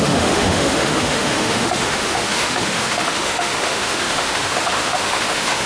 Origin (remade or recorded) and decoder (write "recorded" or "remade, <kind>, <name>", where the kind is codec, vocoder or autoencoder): remade, autoencoder, DAC-VAE